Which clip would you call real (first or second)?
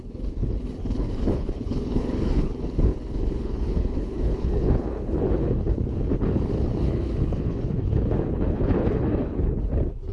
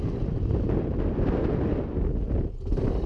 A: second